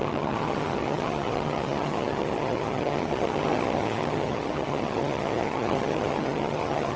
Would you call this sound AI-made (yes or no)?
yes